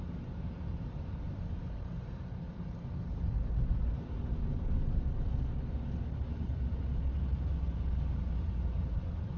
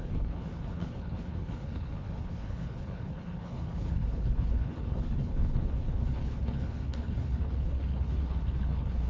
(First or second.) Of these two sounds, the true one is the first